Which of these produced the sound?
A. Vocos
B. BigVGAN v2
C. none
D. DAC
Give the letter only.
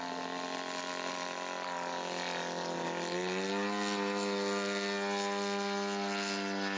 C